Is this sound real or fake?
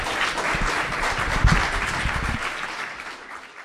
real